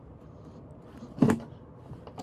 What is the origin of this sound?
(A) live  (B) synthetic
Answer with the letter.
A